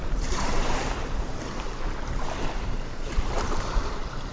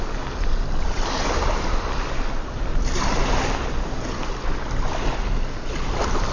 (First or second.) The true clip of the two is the second